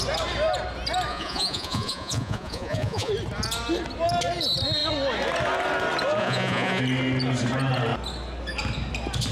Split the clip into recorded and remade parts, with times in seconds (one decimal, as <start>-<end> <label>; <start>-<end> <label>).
0.0-1.1 recorded; 1.1-3.1 remade; 3.1-6.2 recorded; 6.2-6.8 remade; 6.8-9.3 recorded